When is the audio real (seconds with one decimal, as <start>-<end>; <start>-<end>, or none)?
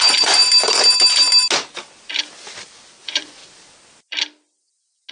0.4-3.0; 3.4-5.1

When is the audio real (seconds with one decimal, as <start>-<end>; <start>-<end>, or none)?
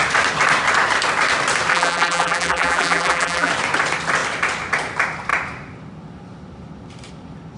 0.0-1.7; 3.5-7.6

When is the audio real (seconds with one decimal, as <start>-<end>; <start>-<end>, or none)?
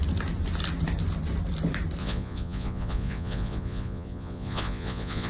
0.0-2.0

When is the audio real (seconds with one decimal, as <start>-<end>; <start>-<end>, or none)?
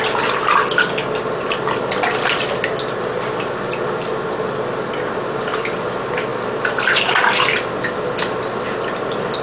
0.0-9.4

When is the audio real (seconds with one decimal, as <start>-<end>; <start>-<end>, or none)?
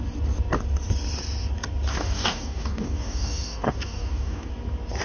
0.0-1.9; 4.5-5.0